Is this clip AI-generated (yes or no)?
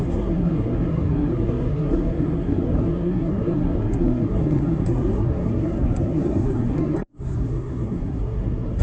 yes